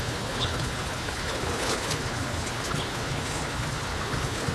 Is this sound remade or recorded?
remade